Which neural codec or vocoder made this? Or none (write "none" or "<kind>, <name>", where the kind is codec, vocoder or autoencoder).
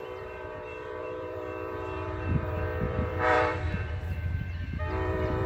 vocoder, BigVGAN v2